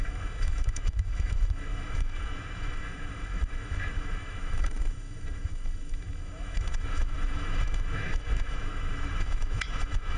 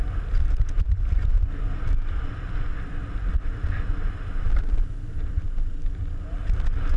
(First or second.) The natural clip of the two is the second